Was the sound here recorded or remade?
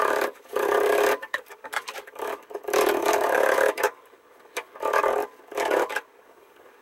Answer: remade